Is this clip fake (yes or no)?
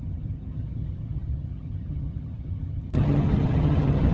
yes